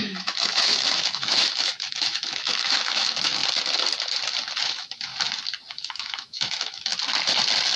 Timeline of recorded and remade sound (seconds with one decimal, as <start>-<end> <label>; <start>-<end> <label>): 0.0-3.4 remade; 3.4-4.6 recorded; 4.6-5.1 remade; 5.1-5.7 recorded; 5.7-6.9 remade; 6.9-7.8 recorded